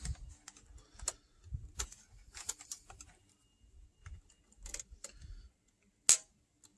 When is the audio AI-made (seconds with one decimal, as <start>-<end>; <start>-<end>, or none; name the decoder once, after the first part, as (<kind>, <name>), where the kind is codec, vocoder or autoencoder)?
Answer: none